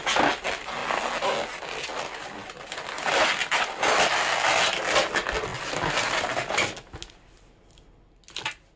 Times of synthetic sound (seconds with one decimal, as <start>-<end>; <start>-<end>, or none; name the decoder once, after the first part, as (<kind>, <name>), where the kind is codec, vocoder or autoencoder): none